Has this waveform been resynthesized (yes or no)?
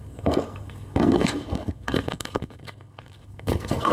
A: yes